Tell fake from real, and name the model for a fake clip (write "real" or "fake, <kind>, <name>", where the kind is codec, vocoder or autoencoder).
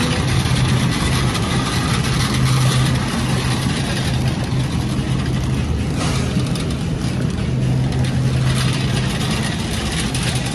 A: real